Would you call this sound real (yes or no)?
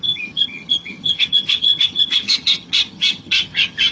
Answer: no